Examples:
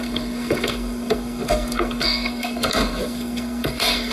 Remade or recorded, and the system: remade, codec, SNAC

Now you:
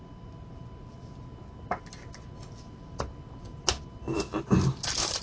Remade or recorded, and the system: recorded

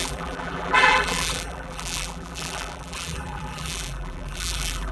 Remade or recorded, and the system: remade, vocoder, BigVGAN v2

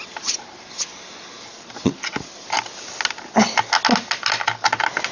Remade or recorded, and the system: recorded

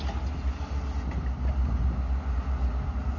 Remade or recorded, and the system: recorded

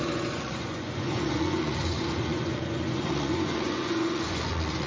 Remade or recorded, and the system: remade, vocoder, Vocos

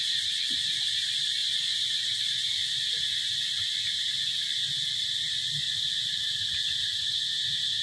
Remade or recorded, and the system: recorded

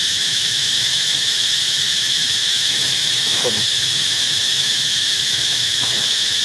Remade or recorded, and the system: remade, autoencoder, DAC-VAE